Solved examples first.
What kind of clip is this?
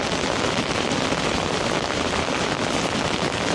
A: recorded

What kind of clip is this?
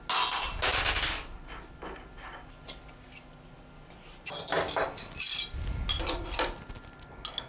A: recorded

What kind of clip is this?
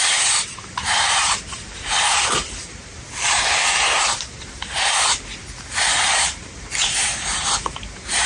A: remade